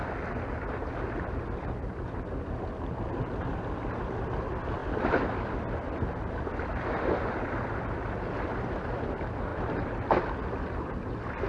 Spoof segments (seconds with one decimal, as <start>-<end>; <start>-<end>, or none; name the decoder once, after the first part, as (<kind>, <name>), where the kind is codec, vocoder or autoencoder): none